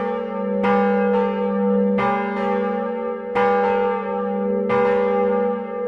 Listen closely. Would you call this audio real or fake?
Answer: real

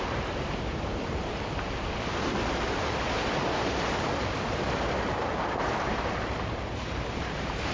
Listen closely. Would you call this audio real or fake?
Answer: fake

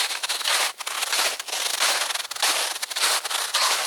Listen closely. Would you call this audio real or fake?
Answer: real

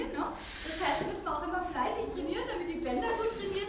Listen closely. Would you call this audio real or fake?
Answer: real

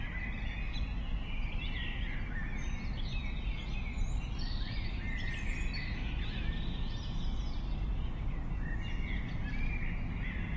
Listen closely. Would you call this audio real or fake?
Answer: real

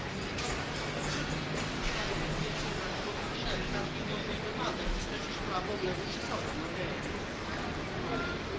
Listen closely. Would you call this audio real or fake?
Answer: real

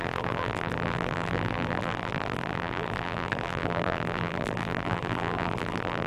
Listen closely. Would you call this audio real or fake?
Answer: fake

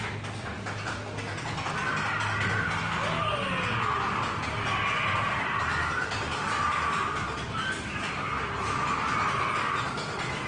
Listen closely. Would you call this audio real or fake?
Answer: real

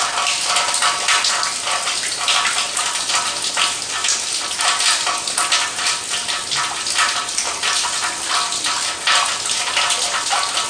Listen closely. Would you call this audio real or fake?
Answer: real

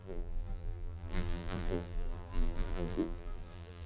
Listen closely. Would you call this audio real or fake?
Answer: fake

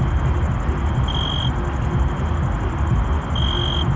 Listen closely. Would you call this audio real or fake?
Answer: real